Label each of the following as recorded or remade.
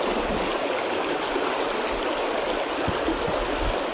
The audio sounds recorded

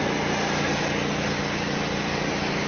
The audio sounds recorded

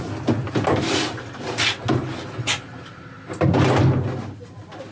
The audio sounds recorded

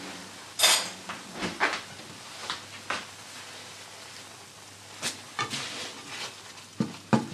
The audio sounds recorded